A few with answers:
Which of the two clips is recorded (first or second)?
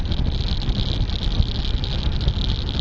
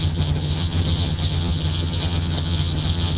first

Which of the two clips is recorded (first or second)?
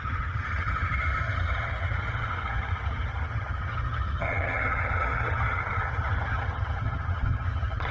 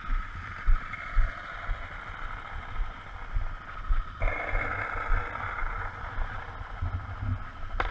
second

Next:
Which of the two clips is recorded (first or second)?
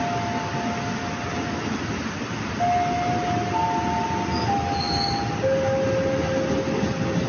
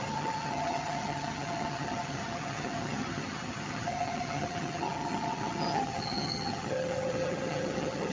first